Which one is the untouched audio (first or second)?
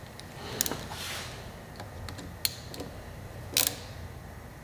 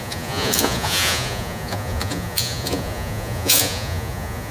first